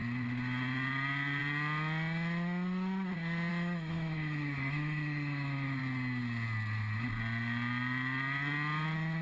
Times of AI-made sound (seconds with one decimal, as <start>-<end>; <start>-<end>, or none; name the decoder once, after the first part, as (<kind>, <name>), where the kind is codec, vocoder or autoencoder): 3.5-5.8 (autoencoder, DAC-VAE)

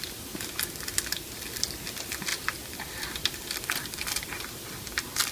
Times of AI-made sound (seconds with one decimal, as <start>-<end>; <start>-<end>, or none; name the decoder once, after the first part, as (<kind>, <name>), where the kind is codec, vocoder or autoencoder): none

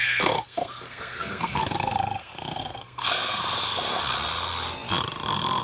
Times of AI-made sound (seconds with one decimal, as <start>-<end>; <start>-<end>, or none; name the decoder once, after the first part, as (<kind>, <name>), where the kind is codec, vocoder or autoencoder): 0.0-3.4 (codec, SNAC)

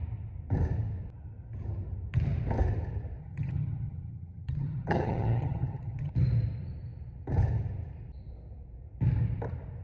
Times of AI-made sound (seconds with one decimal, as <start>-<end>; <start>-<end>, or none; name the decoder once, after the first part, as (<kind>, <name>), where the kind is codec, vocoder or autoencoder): 3.2-6.1 (vocoder, HiFi-GAN)

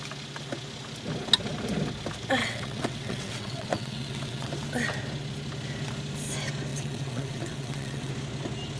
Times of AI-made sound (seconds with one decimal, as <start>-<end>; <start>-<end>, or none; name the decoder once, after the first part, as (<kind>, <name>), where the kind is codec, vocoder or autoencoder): 2.4-4.5 (vocoder, WaveNeXt); 6.7-8.1

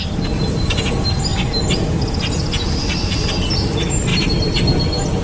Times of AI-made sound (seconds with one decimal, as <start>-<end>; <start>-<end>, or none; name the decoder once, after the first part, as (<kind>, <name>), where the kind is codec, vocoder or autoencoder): none